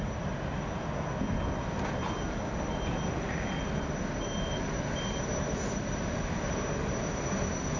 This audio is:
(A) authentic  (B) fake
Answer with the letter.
A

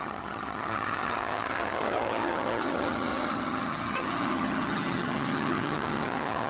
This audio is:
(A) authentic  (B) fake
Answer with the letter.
B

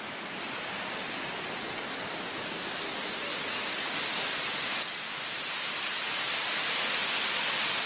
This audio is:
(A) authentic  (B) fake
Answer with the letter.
A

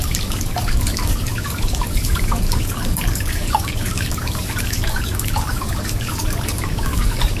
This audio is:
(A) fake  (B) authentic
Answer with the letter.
A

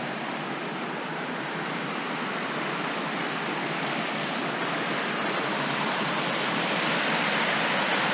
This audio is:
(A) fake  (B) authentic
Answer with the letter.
B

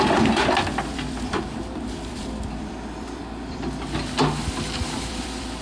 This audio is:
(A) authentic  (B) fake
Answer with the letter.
B